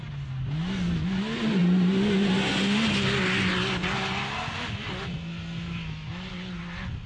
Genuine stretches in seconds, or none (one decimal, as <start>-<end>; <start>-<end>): 0.0-7.1